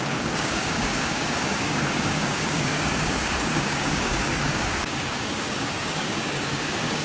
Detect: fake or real fake